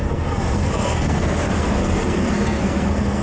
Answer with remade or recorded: remade